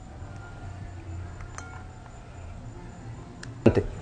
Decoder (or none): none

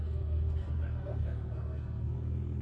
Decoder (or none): codec, SNAC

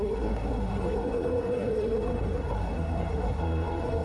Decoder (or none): codec, SNAC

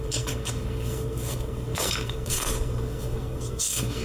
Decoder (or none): codec, SNAC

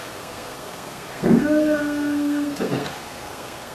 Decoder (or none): codec, SNAC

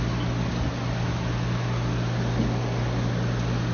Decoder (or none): none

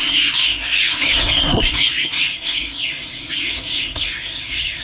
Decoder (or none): codec, SNAC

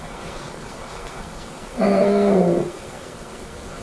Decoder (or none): codec, SNAC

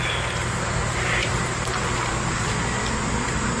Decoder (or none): none